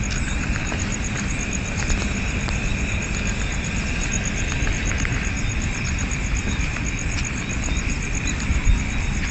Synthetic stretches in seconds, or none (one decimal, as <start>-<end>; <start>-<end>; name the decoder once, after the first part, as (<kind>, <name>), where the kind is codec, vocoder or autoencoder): 0.6-1.3 (vocoder, BigVGAN v2)